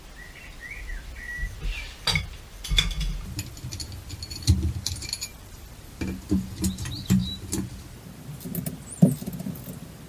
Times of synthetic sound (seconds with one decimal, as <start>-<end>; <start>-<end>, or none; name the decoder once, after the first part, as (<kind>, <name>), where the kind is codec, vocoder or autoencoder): none